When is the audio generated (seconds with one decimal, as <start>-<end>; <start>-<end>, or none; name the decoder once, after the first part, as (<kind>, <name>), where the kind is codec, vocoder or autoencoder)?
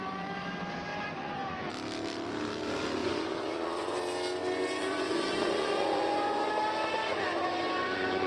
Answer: 0.9-1.6 (vocoder, Vocos); 3.0-4.0; 4.8-6.5; 7.1-8.3